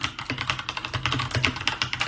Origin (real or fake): real